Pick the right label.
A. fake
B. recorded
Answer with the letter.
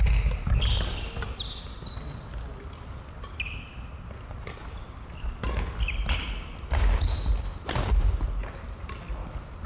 B